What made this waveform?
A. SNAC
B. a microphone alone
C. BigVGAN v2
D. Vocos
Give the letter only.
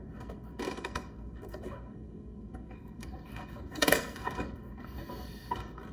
A